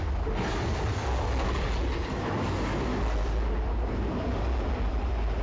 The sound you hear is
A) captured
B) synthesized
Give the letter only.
A